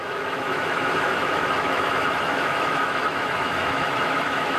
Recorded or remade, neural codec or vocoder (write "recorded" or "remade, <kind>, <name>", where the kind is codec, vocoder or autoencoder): remade, autoencoder, DAC-VAE